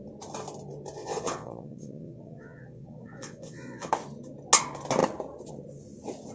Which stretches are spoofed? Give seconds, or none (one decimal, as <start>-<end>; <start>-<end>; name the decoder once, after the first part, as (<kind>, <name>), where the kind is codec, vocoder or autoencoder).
1.0-3.9 (vocoder, Vocos)